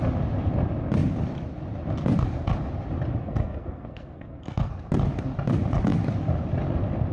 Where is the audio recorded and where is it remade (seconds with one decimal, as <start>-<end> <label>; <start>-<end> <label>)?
0.0-3.2 recorded; 3.2-4.7 remade; 4.7-7.1 recorded